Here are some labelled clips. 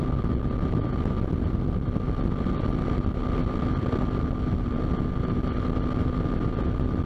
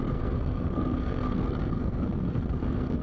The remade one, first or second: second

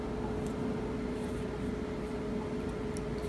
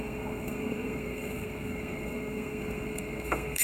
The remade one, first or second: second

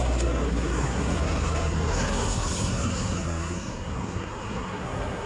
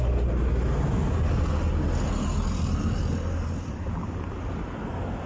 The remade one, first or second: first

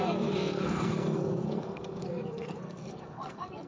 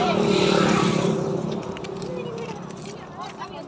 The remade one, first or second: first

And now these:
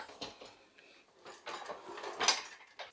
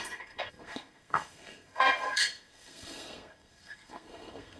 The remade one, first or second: second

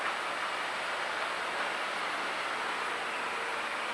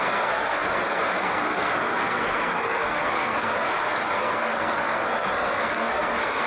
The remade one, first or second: second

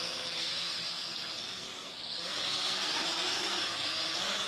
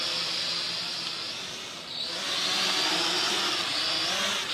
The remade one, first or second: first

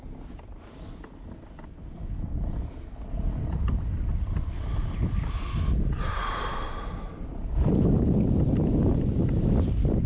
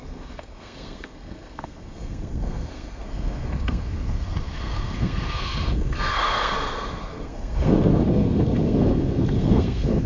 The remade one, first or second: second